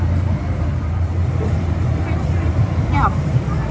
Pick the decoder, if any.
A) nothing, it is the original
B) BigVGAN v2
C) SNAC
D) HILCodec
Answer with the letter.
B